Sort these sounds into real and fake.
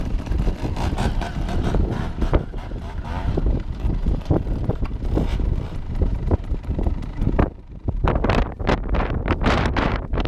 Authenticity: fake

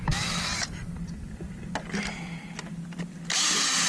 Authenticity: real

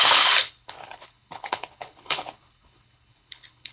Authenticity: fake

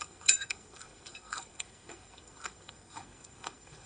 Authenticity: fake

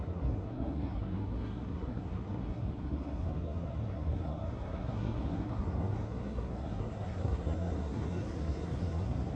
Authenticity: fake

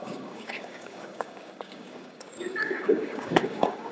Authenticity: fake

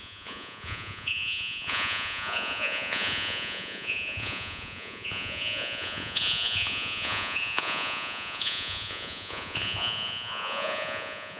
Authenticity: fake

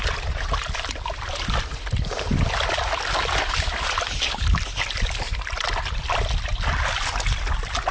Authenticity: real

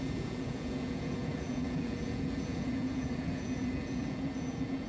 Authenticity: fake